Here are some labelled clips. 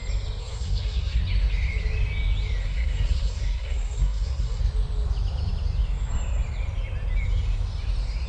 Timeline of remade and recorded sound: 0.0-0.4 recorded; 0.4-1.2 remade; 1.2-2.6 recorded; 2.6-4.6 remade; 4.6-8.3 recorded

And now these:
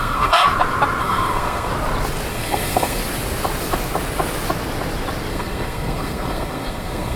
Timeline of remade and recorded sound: 0.0-0.4 remade; 0.4-1.0 recorded; 1.0-1.7 remade; 1.7-2.3 recorded; 2.3-3.0 remade; 3.0-5.3 recorded; 5.3-7.2 remade